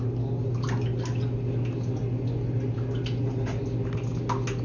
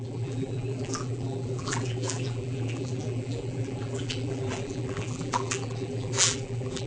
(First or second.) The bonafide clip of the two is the first